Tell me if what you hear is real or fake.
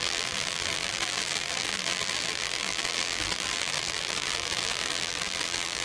fake